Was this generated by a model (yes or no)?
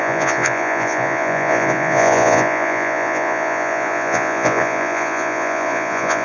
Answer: yes